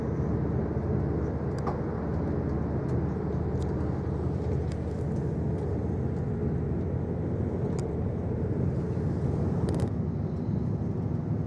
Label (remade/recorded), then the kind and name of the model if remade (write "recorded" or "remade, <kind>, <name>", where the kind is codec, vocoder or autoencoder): recorded